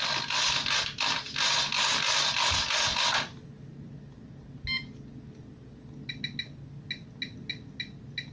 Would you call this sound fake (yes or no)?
no